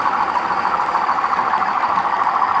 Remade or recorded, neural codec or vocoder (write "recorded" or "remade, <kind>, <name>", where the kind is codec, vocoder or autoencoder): recorded